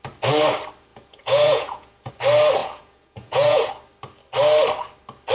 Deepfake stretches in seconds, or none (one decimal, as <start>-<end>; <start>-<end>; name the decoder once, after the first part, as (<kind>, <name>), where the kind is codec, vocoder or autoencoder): 0.9-2.1 (vocoder, Vocos); 2.6-3.7